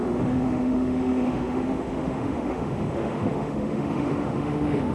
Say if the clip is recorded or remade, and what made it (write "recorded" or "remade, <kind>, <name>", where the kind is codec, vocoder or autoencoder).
remade, autoencoder, DAC-VAE